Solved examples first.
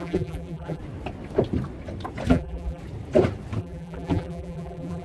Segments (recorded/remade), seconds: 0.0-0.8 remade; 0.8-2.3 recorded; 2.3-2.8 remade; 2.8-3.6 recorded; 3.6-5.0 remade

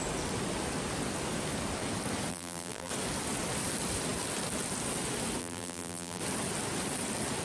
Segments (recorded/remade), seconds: 0.0-2.3 recorded; 2.3-2.9 remade; 2.9-5.4 recorded; 5.4-6.2 remade; 6.2-7.4 recorded

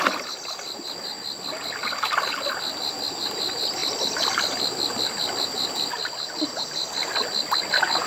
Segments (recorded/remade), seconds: 0.0-8.1 recorded

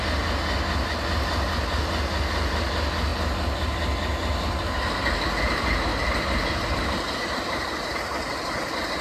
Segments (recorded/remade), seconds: 0.0-9.0 recorded

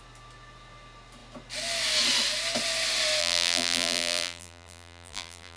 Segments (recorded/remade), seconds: 0.0-3.2 recorded; 3.2-5.6 remade

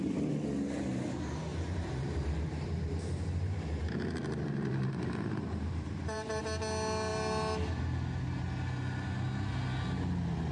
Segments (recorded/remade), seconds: 0.0-1.5 recorded; 1.5-6.4 remade; 6.4-10.5 recorded

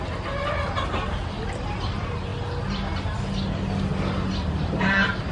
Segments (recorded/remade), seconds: 0.0-5.3 recorded